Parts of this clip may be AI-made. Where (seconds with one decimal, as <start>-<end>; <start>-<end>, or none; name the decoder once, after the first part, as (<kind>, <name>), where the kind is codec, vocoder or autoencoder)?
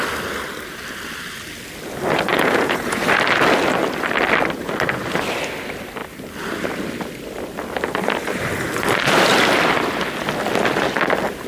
2.3-3.0 (vocoder, Vocos)